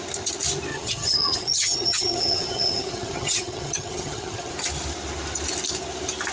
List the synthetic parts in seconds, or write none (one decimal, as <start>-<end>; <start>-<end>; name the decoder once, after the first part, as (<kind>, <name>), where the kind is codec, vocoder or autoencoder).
0.7-4.5 (vocoder, HiFi-GAN)